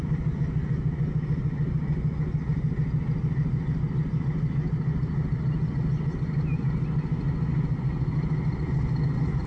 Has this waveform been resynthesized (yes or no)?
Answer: no